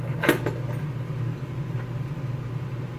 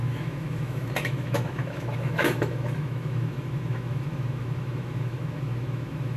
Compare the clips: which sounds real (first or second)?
first